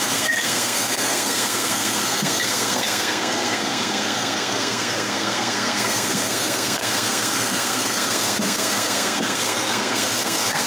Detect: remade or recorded remade